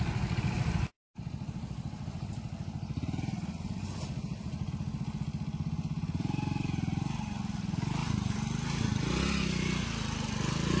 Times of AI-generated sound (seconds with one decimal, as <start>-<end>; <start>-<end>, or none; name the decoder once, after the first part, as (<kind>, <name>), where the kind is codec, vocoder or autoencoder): none